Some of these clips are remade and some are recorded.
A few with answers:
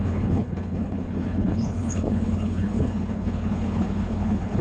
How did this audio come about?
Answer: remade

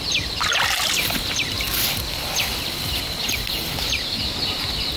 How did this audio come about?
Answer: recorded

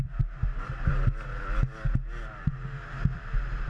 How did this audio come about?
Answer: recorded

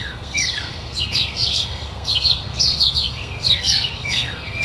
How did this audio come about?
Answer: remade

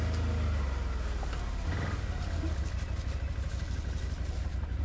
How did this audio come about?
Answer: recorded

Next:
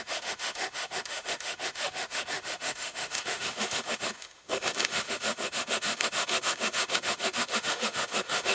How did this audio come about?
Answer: remade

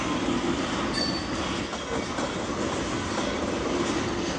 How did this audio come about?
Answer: recorded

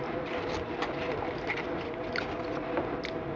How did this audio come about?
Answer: recorded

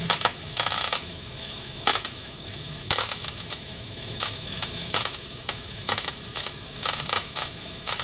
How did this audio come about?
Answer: remade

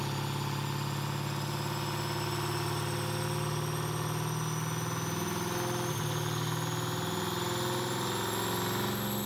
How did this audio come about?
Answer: recorded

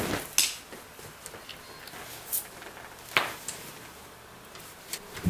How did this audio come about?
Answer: recorded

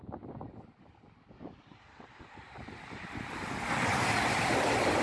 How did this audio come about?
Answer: recorded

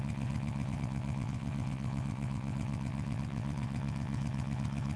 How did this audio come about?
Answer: remade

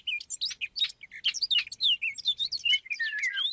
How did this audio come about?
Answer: recorded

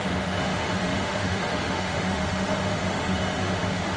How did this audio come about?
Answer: remade